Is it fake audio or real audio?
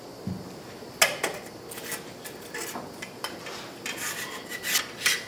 real